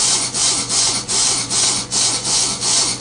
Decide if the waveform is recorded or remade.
remade